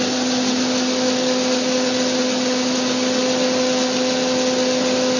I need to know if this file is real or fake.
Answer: real